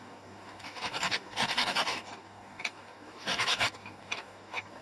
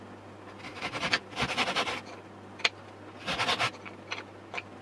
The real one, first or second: second